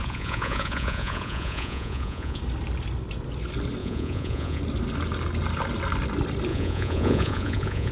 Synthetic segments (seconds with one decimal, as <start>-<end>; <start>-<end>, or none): 0.0-2.4; 3.8-4.6; 6.5-7.9